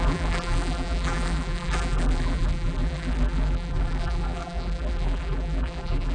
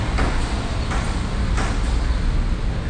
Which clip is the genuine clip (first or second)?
second